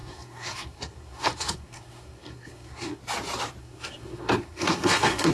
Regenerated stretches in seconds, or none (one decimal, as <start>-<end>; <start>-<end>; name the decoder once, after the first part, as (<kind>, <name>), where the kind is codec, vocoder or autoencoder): 0.0-3.0 (codec, SNAC); 3.6-5.3